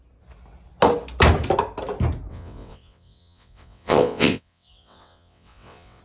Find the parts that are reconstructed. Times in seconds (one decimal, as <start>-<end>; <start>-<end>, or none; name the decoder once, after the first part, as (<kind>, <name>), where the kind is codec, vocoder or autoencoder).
2.3-6.0 (vocoder, WaveNeXt)